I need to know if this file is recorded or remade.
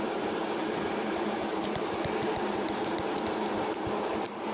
remade